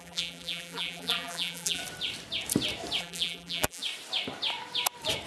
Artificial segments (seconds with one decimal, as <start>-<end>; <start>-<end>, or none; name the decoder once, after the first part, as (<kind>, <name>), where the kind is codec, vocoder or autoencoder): 0.0-1.8 (vocoder, BigVGAN v2); 3.0-3.8